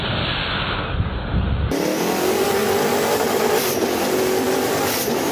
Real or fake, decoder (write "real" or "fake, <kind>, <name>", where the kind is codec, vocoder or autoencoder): real